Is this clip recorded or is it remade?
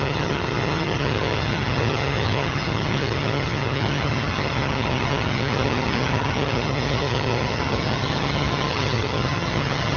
remade